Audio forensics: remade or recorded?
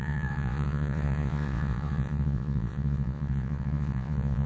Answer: remade